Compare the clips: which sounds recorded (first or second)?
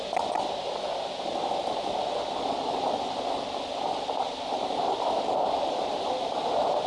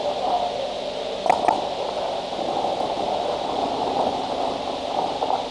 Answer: second